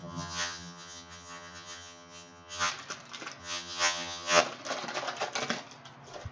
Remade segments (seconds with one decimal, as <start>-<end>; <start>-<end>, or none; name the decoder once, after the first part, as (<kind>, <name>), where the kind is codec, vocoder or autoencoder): 0.0-2.7 (vocoder, HiFi-GAN); 3.4-4.4